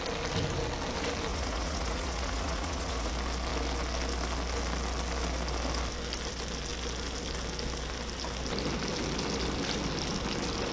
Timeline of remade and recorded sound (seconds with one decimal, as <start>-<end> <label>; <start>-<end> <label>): 0.0-1.3 recorded; 1.3-3.1 remade; 3.1-10.7 recorded